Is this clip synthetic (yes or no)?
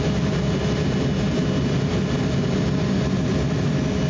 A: no